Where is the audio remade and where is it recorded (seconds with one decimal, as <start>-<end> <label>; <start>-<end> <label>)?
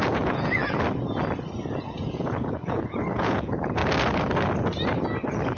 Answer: 0.0-0.6 remade; 0.6-1.8 recorded; 1.8-3.8 remade; 3.8-5.6 recorded